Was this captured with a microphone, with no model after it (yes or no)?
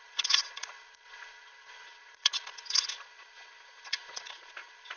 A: no